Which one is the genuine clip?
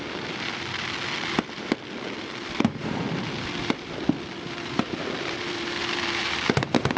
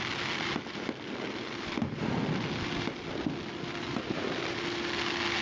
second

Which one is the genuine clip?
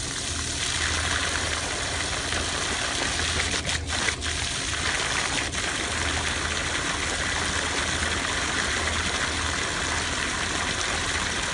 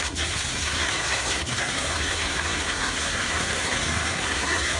first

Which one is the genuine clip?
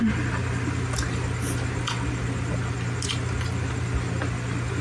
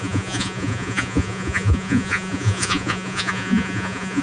first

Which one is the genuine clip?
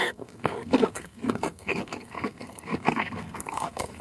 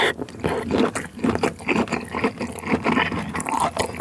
second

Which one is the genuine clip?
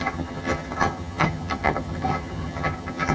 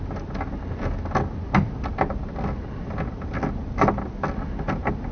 second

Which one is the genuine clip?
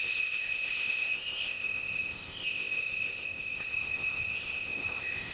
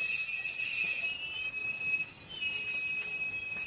second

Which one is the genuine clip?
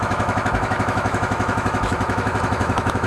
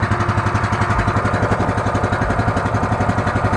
second